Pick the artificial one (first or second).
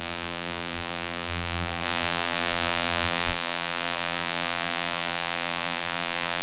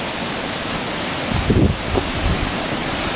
first